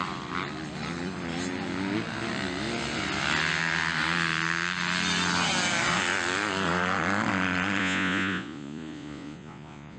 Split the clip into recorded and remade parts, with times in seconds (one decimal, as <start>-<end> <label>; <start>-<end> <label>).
0.0-7.8 recorded; 7.8-10.0 remade